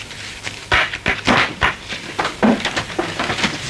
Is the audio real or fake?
real